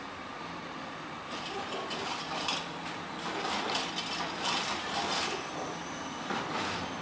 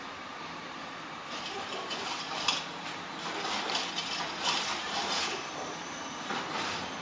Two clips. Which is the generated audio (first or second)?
second